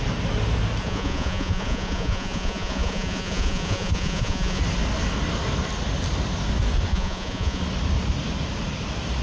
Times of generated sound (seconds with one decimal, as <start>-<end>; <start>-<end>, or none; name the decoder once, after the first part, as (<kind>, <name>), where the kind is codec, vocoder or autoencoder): 0.8-4.6 (vocoder, Vocos); 6.9-7.6